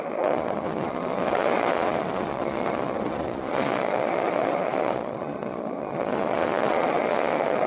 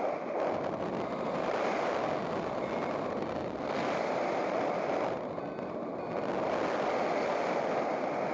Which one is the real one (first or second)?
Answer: second